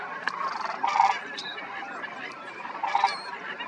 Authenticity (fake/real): real